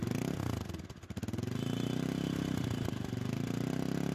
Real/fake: real